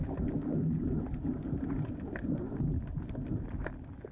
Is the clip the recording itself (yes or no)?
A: yes